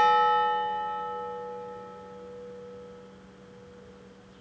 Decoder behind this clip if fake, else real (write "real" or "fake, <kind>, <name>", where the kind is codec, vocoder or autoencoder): real